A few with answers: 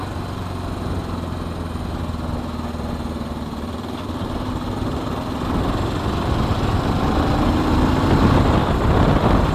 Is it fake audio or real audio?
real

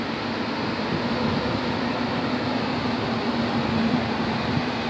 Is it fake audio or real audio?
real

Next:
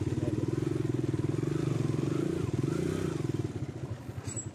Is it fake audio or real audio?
real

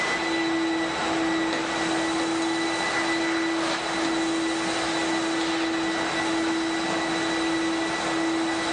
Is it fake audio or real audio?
real